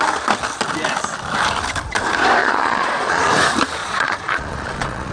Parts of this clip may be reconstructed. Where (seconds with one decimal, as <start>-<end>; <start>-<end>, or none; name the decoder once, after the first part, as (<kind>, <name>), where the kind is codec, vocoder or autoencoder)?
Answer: 2.4-3.3 (vocoder, Vocos); 3.8-5.1